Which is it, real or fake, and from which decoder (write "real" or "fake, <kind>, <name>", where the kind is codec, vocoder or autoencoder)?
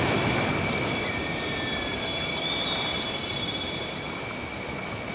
real